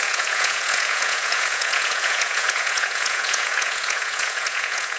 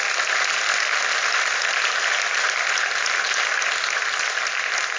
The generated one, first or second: first